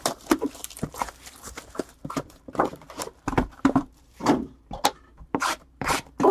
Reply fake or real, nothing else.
fake